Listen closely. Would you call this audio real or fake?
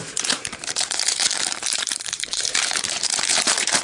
fake